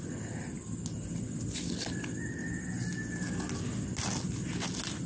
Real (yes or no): yes